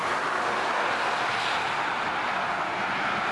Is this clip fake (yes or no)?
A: no